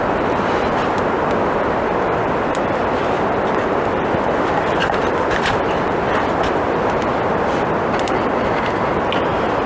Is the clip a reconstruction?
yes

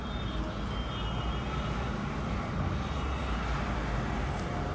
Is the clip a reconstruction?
no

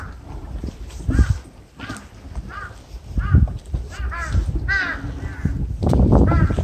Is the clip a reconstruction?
no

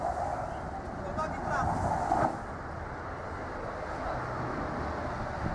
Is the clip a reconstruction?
no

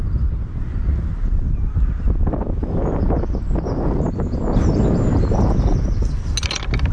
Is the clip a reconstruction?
no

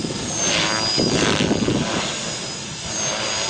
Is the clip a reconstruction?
no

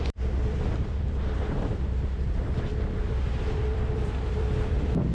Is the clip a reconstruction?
yes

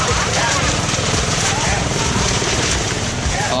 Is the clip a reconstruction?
yes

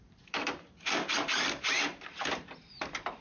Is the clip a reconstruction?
yes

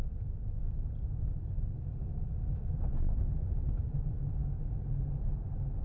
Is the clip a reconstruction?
no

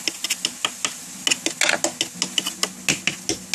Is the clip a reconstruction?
no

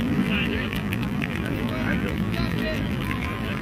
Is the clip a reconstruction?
yes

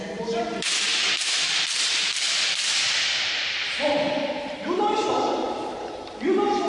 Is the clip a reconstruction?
yes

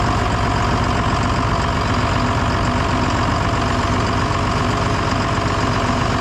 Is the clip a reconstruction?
no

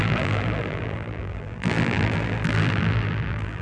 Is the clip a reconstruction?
yes